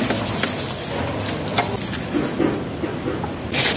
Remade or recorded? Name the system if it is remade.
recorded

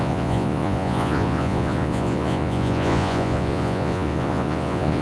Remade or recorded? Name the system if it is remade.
remade, vocoder, Vocos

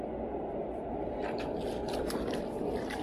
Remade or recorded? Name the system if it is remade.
recorded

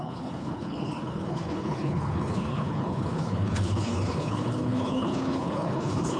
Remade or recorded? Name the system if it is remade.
remade, codec, HILCodec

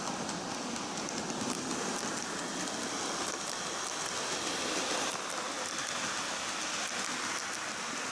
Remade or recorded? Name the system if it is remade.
recorded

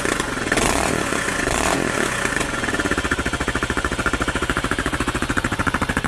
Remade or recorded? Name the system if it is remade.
remade, vocoder, Vocos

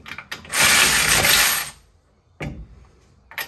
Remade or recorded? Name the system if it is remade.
recorded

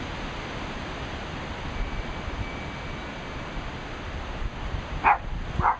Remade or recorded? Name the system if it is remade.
recorded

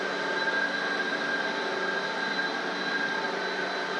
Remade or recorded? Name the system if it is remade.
recorded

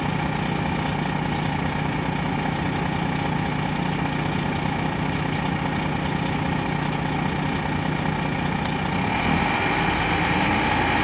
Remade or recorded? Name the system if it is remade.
recorded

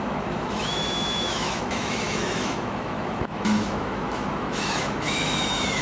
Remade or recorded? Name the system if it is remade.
remade, autoencoder, DAC-VAE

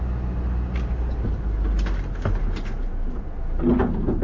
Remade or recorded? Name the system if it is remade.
recorded